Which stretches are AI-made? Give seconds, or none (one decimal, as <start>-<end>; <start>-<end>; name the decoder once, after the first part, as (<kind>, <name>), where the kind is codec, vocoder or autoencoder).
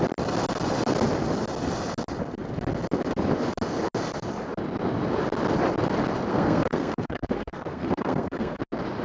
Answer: 6.3-8.6 (codec, SNAC)